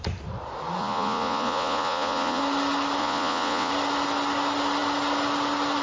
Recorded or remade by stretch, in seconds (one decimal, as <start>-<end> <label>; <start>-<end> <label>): 0.0-0.8 recorded; 0.8-2.4 remade; 2.4-3.0 recorded; 3.0-3.7 remade; 3.7-5.8 recorded